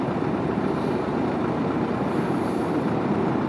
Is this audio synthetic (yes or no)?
yes